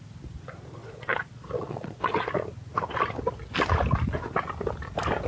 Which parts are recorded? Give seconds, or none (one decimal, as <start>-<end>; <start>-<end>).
0.0-0.8; 2.3-5.3